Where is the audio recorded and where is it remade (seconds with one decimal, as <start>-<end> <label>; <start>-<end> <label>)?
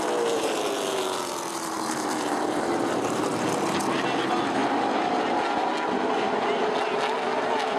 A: 0.0-7.8 recorded